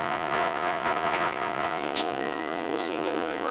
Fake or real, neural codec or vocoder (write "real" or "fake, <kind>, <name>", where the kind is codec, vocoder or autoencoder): fake, vocoder, Vocos